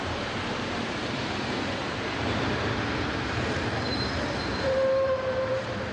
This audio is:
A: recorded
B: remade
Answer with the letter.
B